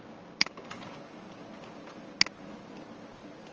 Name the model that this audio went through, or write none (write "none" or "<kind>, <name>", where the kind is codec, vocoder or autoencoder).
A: none